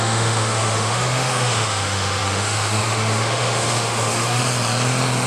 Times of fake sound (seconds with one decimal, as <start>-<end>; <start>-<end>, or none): 0.0-4.4